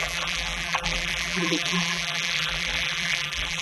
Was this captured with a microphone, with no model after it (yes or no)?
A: no